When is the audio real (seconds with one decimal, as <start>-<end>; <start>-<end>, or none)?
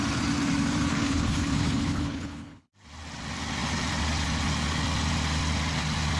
0.0-0.9; 2.7-6.2